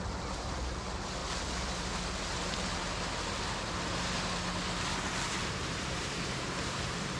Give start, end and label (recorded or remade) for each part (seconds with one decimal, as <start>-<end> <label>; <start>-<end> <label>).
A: 0.0-1.2 remade; 1.2-5.5 recorded; 5.5-7.2 remade